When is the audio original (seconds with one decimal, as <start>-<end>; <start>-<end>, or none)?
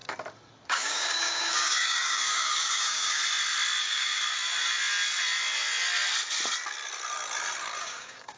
0.0-0.7; 3.2-3.8; 4.2-7.8